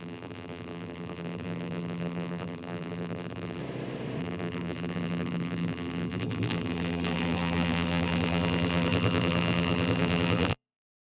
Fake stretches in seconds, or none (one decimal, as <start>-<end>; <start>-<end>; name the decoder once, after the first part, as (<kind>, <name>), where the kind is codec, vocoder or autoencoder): 0.0-3.6 (vocoder, BigVGAN v2); 4.2-11.2